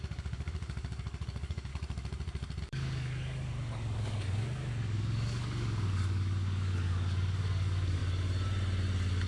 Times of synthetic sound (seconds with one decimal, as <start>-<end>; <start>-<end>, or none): 0.0-1.7; 2.6-8.0